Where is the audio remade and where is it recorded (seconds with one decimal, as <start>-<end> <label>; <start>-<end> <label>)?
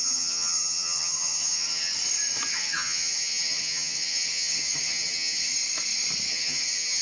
0.0-1.9 remade; 1.9-2.5 recorded; 2.5-5.5 remade; 5.5-6.3 recorded; 6.3-7.0 remade